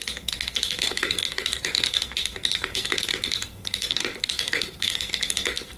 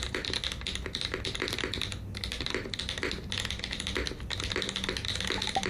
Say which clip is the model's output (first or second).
first